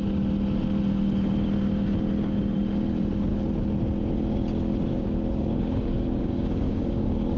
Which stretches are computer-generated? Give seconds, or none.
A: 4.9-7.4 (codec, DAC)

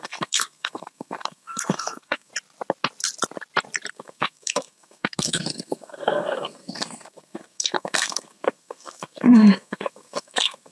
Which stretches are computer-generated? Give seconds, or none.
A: 0.0-2.3 (codec, SNAC); 3.9-10.7

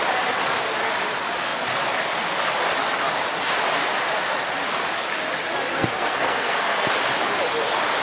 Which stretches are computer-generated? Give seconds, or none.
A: 5.7-6.9 (codec, SNAC)

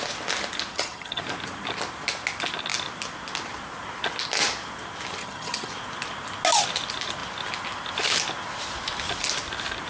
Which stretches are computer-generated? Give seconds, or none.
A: 0.7-1.2 (vocoder, HiFi-GAN); 5.2-5.7

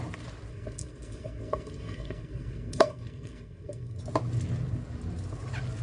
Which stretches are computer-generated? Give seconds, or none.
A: 0.5-4.0 (codec, SNAC)

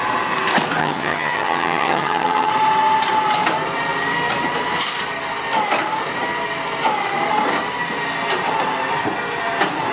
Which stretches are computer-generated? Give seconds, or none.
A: 0.8-2.5 (vocoder, HiFi-GAN)

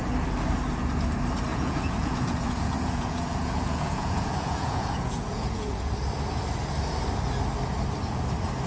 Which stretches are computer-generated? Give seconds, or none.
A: 1.5-5.9 (vocoder, Vocos)

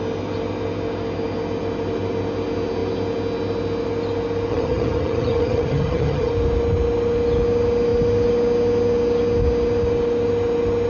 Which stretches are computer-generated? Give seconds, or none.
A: 4.5-6.3 (vocoder, HiFi-GAN)